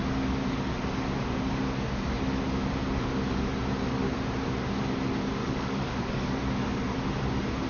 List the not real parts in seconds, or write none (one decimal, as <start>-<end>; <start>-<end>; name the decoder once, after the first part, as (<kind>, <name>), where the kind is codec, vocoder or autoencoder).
5.4-6.4 (codec, DAC)

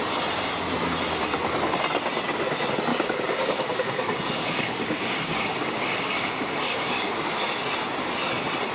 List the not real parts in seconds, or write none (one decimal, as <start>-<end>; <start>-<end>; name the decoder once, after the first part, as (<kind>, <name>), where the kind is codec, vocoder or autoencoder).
2.9-7.2 (codec, DAC)

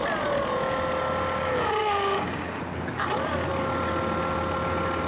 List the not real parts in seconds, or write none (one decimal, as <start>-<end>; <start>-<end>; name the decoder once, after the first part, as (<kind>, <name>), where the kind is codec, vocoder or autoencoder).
1.4-2.6 (codec, DAC)

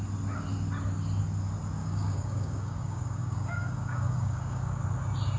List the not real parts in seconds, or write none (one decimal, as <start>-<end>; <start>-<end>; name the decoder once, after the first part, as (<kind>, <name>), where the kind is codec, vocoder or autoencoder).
1.8-4.8 (codec, DAC)

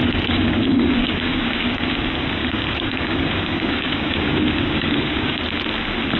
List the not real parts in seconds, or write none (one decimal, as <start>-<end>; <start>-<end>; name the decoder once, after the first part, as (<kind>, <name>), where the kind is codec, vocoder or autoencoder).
0.0-2.0 (codec, DAC); 2.4-5.4